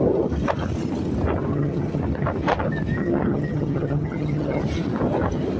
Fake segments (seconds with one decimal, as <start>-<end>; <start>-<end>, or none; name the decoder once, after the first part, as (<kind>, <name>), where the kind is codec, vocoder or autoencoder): 1.5-2.0 (vocoder, HiFi-GAN); 3.0-4.6